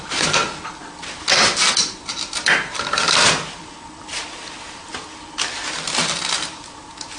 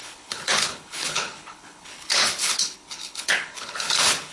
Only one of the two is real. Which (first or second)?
first